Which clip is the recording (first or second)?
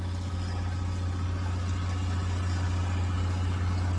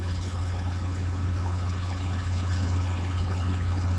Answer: first